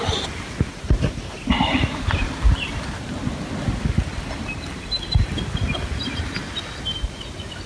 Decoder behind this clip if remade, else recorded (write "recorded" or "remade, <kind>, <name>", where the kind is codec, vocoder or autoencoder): recorded